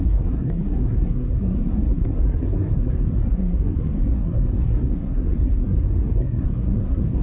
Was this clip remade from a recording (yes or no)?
yes